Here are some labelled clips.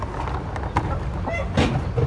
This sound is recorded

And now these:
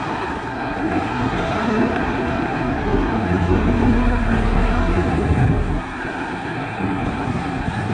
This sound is remade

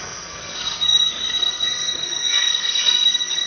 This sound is remade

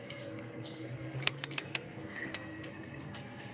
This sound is remade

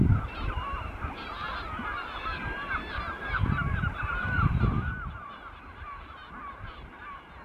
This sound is recorded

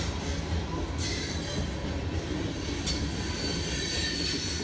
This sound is recorded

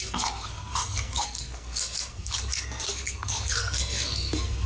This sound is remade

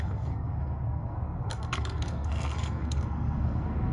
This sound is remade